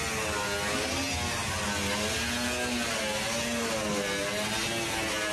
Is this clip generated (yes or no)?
no